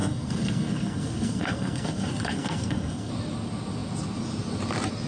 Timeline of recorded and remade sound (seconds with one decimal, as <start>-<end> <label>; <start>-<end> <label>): 0.0-3.1 remade; 3.1-5.1 recorded